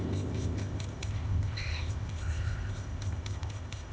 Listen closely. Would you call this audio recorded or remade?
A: remade